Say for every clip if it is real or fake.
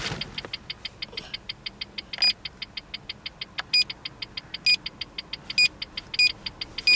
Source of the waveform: real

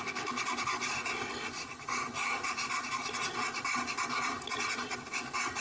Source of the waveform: real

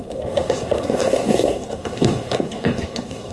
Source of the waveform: fake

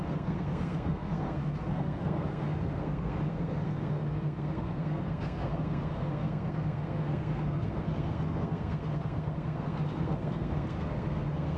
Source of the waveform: fake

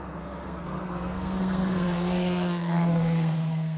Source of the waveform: fake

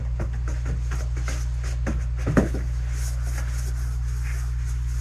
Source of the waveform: real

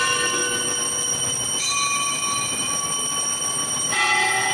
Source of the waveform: real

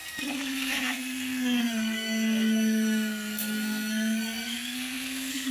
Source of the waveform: fake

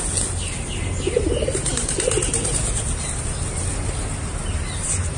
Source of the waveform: real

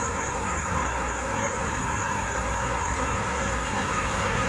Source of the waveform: fake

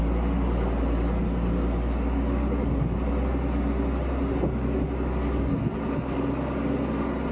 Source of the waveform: real